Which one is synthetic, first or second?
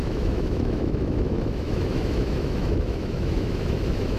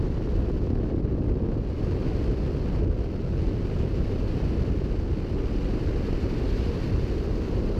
first